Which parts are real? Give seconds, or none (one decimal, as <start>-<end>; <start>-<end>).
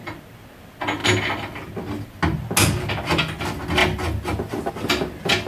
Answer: 0.0-3.8; 4.7-5.5